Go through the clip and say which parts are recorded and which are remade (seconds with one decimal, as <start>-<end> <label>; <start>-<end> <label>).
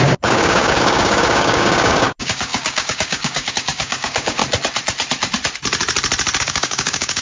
0.0-4.4 remade; 4.4-6.4 recorded; 6.4-7.2 remade